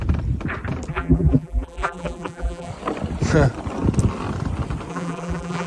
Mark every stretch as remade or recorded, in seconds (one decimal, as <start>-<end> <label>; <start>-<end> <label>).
0.0-0.9 recorded; 0.9-2.7 remade; 2.7-4.9 recorded; 4.9-5.7 remade